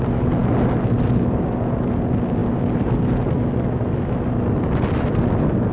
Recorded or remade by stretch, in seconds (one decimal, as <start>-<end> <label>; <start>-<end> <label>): 0.0-5.7 recorded

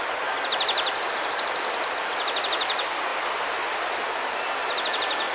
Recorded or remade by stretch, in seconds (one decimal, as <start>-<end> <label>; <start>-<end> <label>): 0.0-5.3 recorded

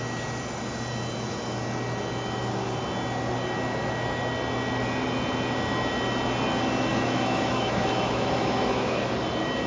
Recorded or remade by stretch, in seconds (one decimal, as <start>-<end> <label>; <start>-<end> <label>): 0.0-6.9 recorded; 6.9-9.1 remade; 9.1-9.7 recorded

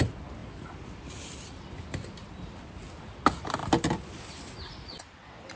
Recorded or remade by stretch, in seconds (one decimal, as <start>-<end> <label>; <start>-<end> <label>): 0.0-5.6 recorded

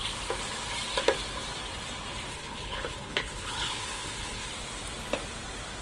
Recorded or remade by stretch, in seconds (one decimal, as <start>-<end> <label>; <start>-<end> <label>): 0.0-2.3 recorded; 2.3-4.5 remade; 4.5-5.8 recorded

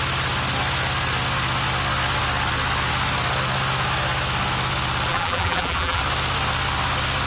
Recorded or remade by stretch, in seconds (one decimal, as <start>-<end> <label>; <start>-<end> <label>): 0.0-5.1 recorded; 5.1-6.0 remade; 6.0-7.3 recorded